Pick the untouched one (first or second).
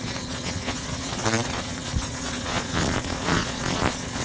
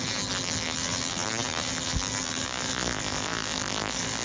second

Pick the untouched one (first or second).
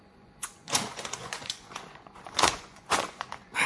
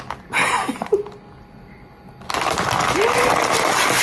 second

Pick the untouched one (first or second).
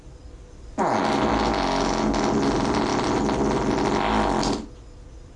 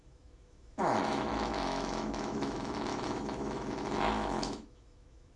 first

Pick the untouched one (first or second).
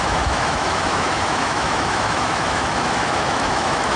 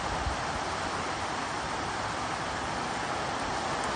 second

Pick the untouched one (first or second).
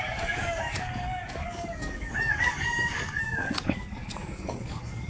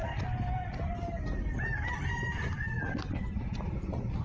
second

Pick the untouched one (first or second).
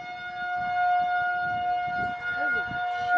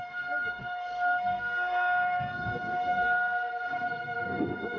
first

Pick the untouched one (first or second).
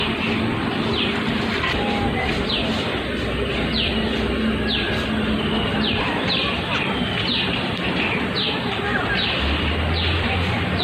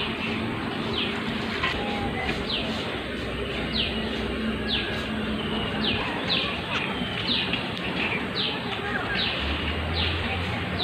second